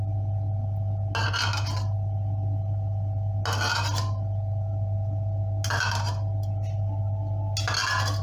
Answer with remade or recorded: recorded